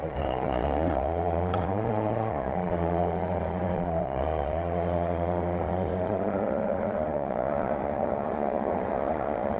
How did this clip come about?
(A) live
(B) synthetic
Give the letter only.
B